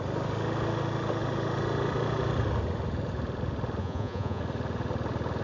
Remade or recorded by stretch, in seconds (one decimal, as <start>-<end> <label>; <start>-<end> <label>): 0.0-3.8 recorded; 3.8-4.4 remade; 4.4-5.4 recorded

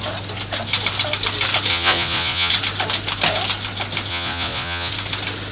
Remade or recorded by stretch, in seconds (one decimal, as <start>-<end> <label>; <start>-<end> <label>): 0.0-1.7 recorded; 1.7-2.5 remade; 2.5-4.1 recorded; 4.1-4.9 remade; 4.9-5.5 recorded